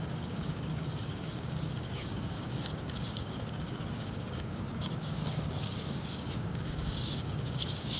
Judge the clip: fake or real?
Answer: fake